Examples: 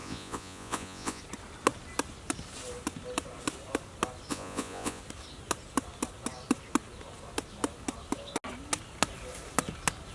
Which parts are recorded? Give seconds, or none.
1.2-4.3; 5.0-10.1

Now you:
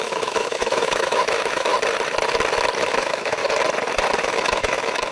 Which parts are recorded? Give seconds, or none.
1.7-2.8; 3.4-4.2

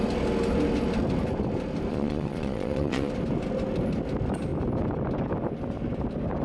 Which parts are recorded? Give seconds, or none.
0.0-1.9; 3.1-6.4

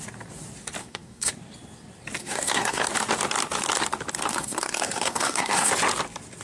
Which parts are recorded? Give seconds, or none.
0.0-0.8; 1.3-2.2; 2.8-4.3; 5.7-6.4

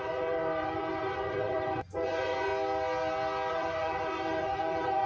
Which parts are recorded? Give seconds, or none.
2.5-3.5